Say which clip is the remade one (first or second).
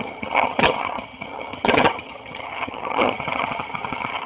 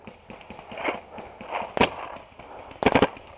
first